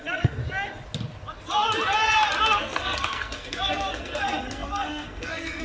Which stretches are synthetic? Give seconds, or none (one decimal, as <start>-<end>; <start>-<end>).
0.0-0.4; 2.4-5.6